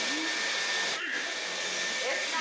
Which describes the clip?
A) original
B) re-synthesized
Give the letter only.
A